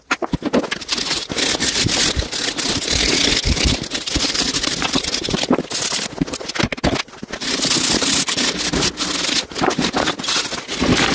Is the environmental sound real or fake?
real